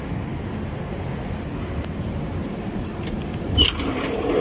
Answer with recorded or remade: recorded